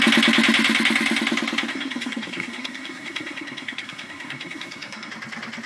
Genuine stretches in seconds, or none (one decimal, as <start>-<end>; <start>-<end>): 0.0-1.7; 5.1-5.7